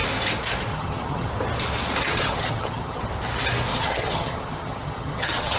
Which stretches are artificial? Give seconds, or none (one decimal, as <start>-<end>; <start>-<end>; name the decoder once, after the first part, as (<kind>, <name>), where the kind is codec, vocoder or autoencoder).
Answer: 0.7-1.3 (vocoder, HiFi-GAN); 2.0-3.0; 3.7-5.6

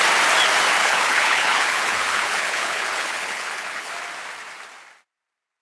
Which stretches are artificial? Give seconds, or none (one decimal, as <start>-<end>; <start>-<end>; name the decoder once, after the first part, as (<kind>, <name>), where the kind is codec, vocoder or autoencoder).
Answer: 0.8-3.9 (codec, HILCodec)

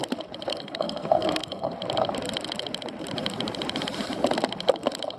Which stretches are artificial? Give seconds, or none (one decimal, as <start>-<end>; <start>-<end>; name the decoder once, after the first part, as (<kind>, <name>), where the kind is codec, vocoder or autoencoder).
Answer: 0.5-1.7 (codec, SNAC)

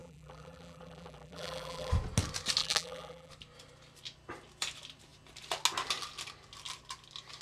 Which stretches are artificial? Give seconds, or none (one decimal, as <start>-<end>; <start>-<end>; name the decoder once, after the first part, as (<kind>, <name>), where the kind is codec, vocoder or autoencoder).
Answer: 0.0-1.9 (vocoder, BigVGAN v2); 2.6-3.3

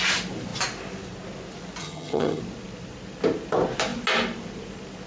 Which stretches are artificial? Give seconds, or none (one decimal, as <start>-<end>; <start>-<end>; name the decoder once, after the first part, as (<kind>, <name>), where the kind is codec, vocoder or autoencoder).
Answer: 1.8-2.4 (vocoder, HiFi-GAN)

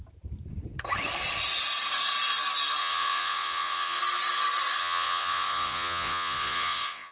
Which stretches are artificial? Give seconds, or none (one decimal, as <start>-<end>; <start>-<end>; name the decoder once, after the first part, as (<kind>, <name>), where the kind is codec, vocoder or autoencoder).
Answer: 2.8-4.0 (vocoder, Vocos); 4.8-7.1

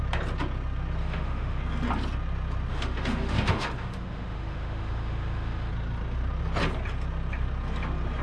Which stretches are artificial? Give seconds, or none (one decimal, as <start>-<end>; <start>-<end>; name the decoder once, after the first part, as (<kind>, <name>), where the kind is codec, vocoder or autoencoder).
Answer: 1.0-1.6 (autoencoder, DAC-VAE); 2.7-5.7

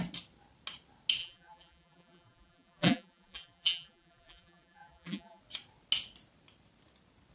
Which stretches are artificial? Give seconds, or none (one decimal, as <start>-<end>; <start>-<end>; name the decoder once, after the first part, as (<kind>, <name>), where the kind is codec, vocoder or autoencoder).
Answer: 1.2-5.4 (vocoder, BigVGAN v2)